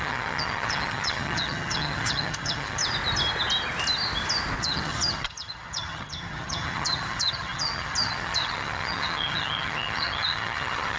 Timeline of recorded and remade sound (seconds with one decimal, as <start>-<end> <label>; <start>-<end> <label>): 0.0-2.8 remade; 2.8-4.6 recorded; 4.6-11.0 remade